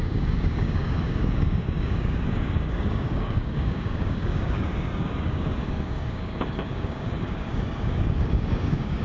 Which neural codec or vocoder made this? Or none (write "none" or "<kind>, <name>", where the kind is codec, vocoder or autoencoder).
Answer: codec, DAC